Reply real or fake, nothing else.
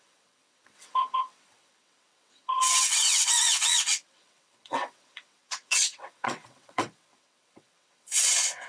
fake